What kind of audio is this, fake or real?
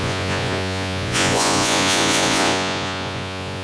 fake